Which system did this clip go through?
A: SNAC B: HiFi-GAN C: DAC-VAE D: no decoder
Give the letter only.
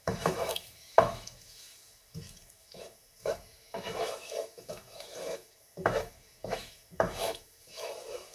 C